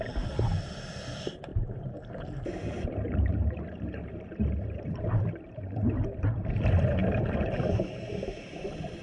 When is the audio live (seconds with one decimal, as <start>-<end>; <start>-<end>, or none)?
0.0-1.5; 5.7-9.0